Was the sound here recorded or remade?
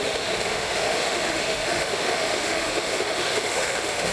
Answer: remade